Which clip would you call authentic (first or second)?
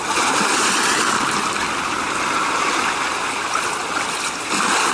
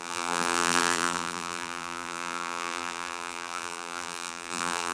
first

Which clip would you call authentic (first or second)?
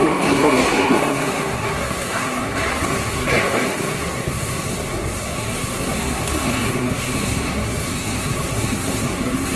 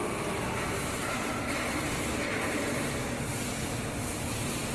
second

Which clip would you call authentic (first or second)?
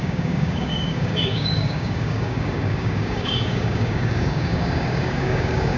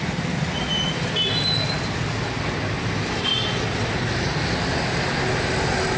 second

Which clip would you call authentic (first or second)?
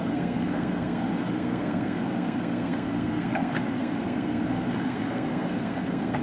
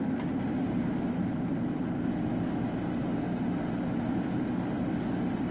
second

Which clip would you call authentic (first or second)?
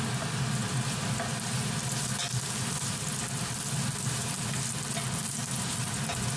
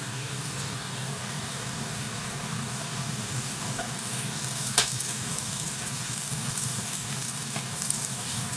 first